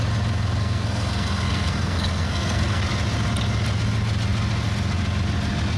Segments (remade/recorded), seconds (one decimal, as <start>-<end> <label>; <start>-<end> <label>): 0.0-0.6 recorded; 0.6-2.8 remade; 2.8-5.8 recorded